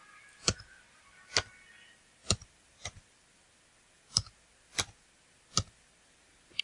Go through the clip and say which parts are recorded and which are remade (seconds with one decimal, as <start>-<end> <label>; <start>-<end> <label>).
0.0-6.6 recorded